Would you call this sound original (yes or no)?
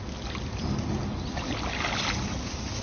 yes